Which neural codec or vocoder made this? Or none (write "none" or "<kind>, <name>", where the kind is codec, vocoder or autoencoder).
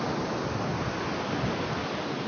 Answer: none